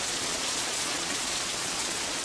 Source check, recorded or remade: remade